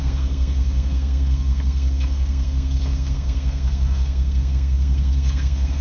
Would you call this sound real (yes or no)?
no